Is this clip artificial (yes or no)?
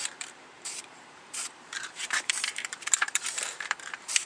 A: yes